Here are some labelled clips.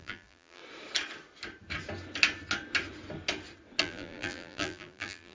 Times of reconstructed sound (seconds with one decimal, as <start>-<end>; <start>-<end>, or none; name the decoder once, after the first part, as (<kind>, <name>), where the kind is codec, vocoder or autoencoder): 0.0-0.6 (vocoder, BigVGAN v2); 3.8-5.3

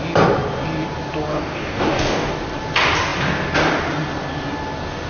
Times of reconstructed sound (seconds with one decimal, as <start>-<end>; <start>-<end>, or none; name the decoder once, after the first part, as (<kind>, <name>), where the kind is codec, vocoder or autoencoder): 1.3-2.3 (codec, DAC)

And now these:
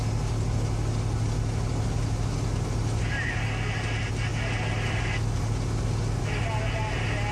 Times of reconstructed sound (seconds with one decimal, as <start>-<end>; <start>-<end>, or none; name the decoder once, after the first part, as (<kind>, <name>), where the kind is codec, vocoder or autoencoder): none

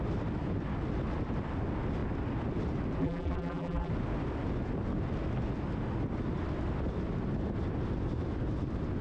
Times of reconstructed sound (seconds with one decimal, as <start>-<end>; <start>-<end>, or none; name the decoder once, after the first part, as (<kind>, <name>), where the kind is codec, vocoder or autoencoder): 3.0-3.9 (vocoder, BigVGAN v2)

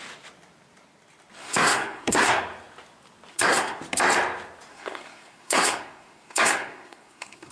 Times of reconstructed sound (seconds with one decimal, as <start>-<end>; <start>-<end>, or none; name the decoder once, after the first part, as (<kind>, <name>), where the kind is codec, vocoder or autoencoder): 1.4-2.4 (codec, SNAC); 3.3-3.8; 4.7-7.5

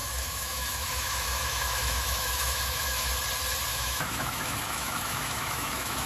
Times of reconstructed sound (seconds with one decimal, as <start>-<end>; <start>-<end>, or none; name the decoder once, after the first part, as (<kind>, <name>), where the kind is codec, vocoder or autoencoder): 0.0-3.1 (autoencoder, DAC-VAE); 3.7-6.1

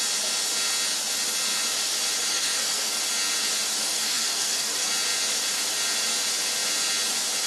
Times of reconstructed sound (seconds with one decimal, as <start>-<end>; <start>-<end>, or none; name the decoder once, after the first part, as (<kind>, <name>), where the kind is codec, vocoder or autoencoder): 2.3-3.0 (codec, SNAC); 3.8-4.9

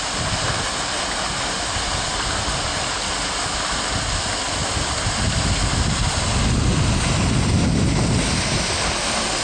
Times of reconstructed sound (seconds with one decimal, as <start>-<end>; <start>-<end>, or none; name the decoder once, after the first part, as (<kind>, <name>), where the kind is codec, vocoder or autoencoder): none